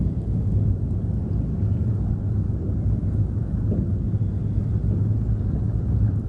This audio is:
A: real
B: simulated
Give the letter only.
A